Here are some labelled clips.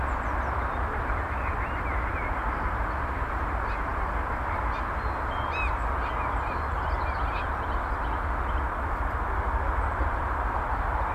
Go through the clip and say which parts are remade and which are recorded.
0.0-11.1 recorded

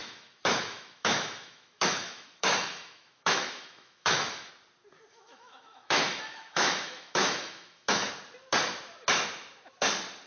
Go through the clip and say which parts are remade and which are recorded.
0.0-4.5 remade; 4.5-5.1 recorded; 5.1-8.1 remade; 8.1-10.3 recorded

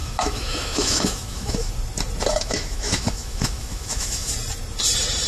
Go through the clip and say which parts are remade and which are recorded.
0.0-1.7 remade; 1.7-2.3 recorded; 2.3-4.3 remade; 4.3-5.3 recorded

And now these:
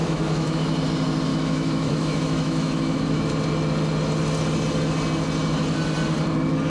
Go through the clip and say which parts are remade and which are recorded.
0.0-0.6 remade; 0.6-1.3 recorded; 1.3-3.3 remade; 3.3-6.7 recorded

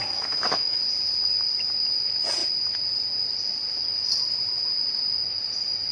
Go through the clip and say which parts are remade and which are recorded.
0.0-0.8 remade; 0.8-5.9 recorded